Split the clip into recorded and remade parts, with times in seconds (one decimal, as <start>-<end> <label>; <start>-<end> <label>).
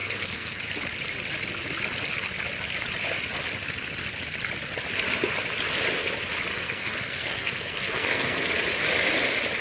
0.0-0.6 remade; 0.6-6.5 recorded; 6.5-8.6 remade; 8.6-9.6 recorded